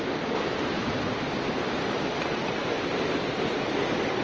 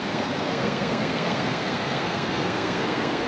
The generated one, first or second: second